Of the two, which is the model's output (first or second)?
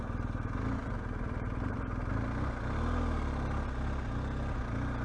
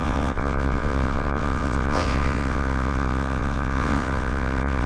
second